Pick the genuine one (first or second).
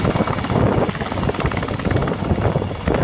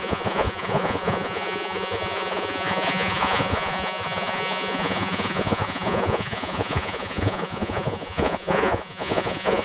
first